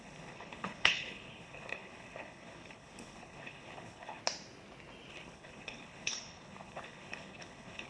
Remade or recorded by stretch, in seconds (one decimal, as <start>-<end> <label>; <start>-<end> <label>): 0.0-4.2 remade; 4.2-5.1 recorded; 5.1-7.9 remade